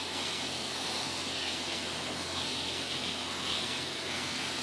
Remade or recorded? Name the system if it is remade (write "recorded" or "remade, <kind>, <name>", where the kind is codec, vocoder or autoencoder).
remade, codec, SNAC